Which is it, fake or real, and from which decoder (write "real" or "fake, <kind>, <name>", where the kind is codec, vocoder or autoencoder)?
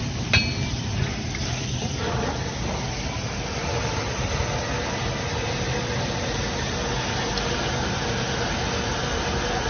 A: real